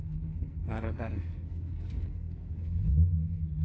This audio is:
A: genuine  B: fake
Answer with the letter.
B